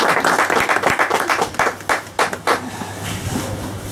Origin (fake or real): real